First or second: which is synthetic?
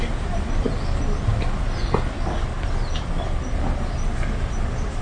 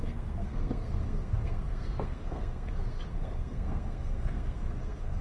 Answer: second